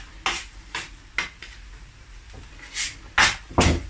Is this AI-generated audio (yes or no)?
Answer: no